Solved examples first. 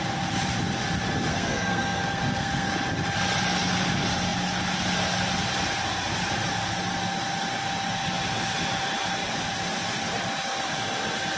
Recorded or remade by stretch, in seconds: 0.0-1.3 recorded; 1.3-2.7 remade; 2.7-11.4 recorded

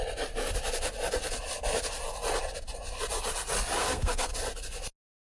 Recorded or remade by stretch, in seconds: 0.0-3.8 recorded; 3.8-4.3 remade; 4.3-5.4 recorded

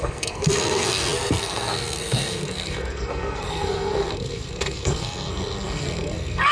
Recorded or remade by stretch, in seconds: 0.0-6.5 remade

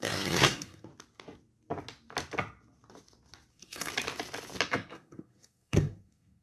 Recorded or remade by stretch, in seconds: 0.0-0.9 remade; 0.9-3.5 recorded; 3.5-3.9 remade; 3.9-4.7 recorded; 4.7-6.4 remade

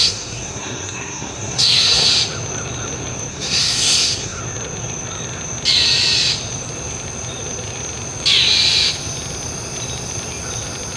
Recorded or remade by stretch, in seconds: 0.0-2.1 remade; 2.1-3.3 recorded; 3.3-4.4 remade; 4.4-11.0 recorded